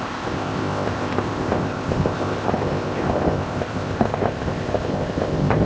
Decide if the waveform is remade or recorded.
remade